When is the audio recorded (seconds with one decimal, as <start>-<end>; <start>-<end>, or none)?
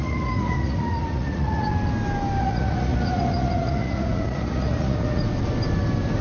1.7-2.4; 5.2-6.2